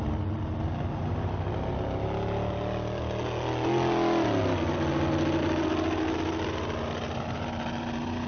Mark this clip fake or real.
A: real